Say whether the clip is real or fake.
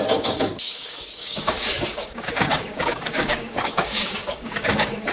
fake